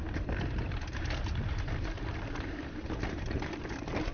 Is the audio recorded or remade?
remade